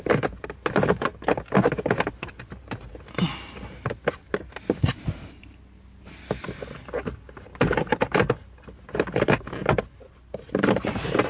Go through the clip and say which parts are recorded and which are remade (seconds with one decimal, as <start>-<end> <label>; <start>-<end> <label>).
0.0-11.3 recorded